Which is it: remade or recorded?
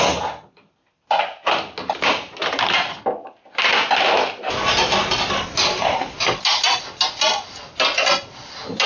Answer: recorded